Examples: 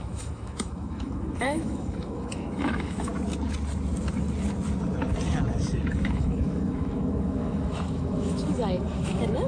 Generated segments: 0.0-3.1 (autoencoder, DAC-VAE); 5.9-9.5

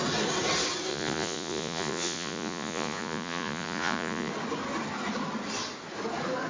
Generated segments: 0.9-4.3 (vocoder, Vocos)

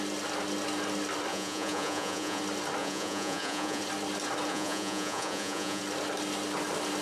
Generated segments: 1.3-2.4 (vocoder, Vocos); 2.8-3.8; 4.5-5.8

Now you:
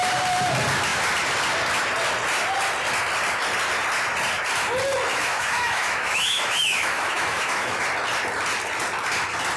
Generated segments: 5.1-7.8 (autoencoder, DAC-VAE)

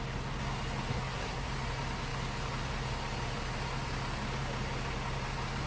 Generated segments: 0.9-1.5 (codec, SNAC)

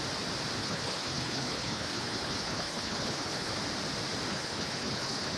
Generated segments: 0.6-3.5 (codec, HILCodec); 4.3-5.4

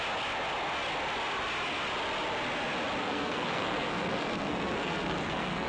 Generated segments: 3.0-5.7 (codec, SNAC)